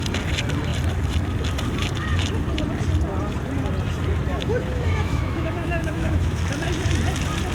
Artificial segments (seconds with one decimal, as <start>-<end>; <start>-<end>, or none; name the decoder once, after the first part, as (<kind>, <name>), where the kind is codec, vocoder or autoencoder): 4.3-6.4 (autoencoder, DAC-VAE)